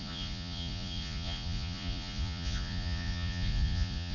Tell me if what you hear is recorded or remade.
remade